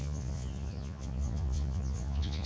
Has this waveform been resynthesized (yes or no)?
yes